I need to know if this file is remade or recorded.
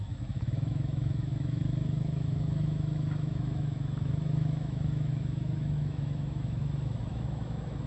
remade